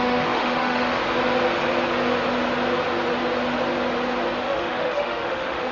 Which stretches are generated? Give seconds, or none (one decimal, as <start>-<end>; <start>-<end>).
0.0-1.0; 4.4-5.7

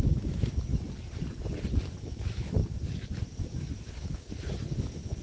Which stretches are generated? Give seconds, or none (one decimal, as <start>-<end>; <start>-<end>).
0.0-0.7; 2.0-2.6; 3.4-5.2

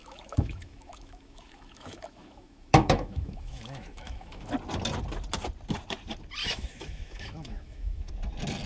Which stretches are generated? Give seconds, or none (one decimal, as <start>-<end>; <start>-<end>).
0.0-4.5; 6.4-8.1

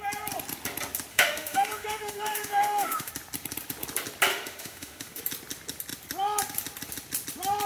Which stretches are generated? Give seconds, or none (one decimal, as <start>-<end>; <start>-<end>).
1.1-3.1; 4.3-5.2

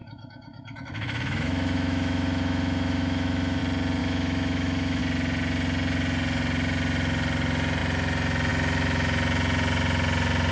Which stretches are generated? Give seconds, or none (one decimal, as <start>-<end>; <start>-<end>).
0.0-3.6; 4.0-5.0